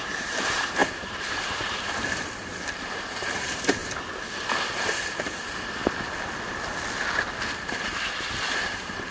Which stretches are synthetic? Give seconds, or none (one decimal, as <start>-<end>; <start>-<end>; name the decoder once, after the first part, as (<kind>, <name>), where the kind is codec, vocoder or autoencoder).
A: 0.0-3.8 (vocoder, BigVGAN v2); 4.8-5.8; 7.6-9.1